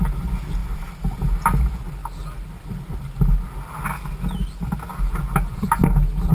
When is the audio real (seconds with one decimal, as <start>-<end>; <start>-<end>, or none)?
0.0-0.6; 1.2-6.3